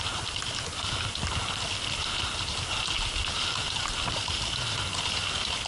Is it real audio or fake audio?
real